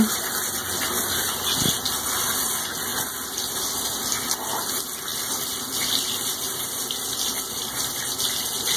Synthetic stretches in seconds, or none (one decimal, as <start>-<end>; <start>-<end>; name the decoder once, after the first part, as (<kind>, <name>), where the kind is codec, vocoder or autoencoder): 2.9-4.1 (vocoder, BigVGAN v2); 5.1-8.3